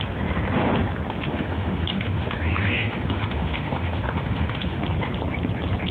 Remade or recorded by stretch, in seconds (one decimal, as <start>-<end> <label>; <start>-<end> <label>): 0.0-1.3 recorded; 1.3-4.8 remade; 4.8-5.9 recorded